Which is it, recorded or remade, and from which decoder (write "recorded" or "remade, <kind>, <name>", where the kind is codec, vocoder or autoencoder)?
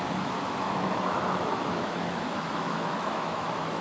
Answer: remade, autoencoder, DAC-VAE